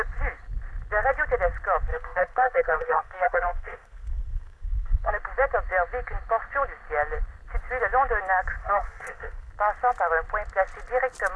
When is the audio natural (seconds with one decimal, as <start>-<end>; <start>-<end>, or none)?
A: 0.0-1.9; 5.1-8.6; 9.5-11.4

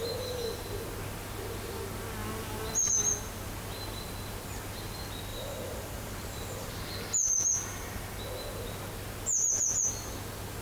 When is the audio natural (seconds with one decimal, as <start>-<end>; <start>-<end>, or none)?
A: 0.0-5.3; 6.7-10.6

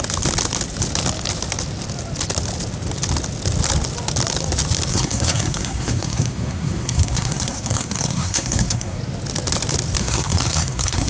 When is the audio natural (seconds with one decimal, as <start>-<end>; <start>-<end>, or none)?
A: 0.0-4.9; 9.0-10.0

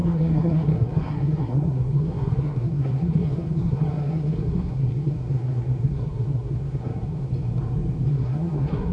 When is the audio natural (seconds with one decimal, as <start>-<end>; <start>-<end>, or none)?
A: 7.3-8.1

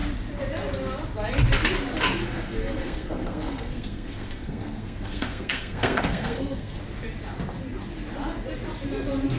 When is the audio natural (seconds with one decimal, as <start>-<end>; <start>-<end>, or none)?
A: 0.0-2.2; 6.8-9.4

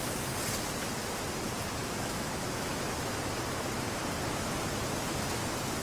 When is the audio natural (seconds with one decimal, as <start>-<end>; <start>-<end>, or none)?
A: 0.0-1.8; 3.2-5.8

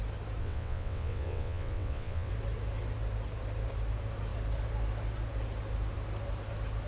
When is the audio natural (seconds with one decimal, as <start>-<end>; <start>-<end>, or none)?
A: 0.0-0.4; 2.3-6.9